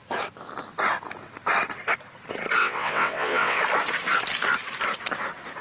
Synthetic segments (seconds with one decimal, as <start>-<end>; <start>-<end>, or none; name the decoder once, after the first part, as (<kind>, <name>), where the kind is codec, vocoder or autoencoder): 2.6-3.6 (vocoder, WaveNeXt)